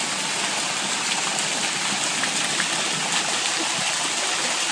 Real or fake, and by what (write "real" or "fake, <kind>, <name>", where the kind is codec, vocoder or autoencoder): real